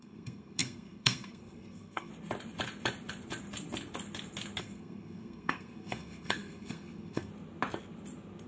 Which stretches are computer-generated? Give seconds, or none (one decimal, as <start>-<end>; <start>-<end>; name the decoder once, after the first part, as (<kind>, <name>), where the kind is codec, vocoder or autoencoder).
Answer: 0.0-2.1 (codec, SNAC); 4.6-7.3